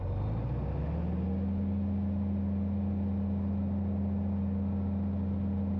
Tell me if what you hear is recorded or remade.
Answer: recorded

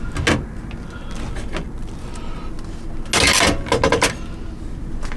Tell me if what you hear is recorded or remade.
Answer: recorded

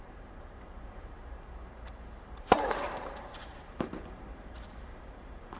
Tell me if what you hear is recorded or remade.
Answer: remade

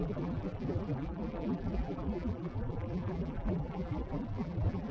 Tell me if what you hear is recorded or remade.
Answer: remade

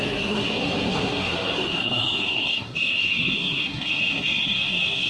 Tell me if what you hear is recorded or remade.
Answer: remade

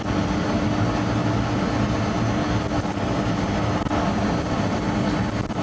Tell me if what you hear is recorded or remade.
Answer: recorded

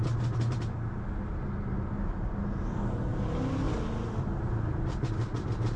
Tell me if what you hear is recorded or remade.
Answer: recorded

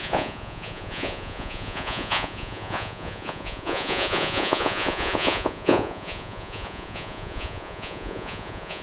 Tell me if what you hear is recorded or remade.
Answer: remade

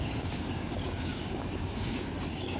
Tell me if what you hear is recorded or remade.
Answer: remade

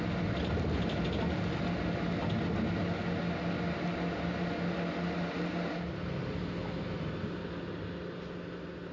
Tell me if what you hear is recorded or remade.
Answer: recorded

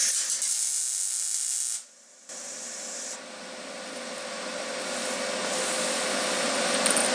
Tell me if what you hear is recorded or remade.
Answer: recorded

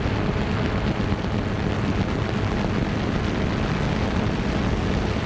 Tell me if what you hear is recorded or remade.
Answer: recorded